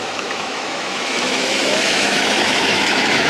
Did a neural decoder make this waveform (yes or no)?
yes